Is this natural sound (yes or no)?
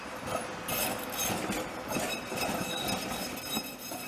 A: yes